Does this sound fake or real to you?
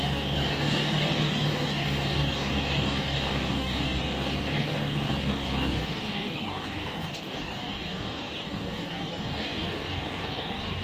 fake